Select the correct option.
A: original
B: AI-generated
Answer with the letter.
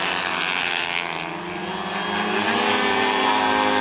A